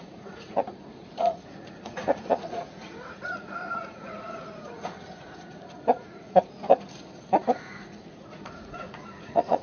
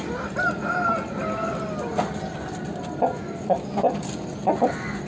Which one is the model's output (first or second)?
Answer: first